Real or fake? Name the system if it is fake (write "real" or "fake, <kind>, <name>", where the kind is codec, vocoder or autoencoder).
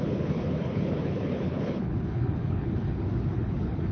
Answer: fake, codec, HILCodec